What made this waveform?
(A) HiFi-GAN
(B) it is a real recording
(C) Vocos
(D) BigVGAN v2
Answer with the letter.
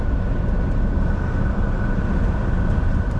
B